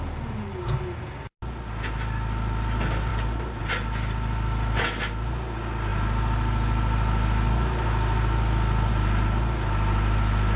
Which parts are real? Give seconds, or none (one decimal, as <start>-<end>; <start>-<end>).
0.0-10.6